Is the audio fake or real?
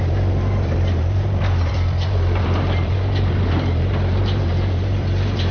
fake